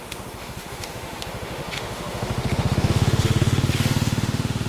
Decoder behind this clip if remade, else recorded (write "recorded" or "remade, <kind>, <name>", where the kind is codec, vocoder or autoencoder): remade, autoencoder, DAC-VAE